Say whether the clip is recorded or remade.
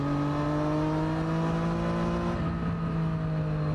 recorded